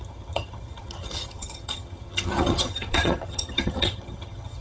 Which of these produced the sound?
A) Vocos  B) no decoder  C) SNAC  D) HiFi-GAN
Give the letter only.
D